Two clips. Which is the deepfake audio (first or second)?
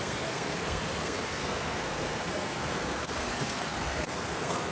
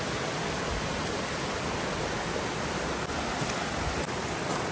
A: first